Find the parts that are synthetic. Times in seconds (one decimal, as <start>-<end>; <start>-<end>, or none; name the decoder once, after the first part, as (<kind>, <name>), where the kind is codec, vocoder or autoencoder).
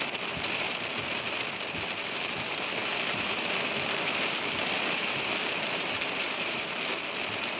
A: none